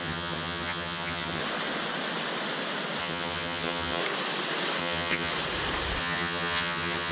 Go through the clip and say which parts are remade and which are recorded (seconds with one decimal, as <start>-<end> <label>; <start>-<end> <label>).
0.0-1.4 remade; 1.4-3.0 recorded; 3.0-4.0 remade; 4.0-4.8 recorded; 4.8-5.3 remade; 5.3-6.0 recorded; 6.0-7.1 remade